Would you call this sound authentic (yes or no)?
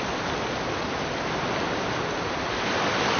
yes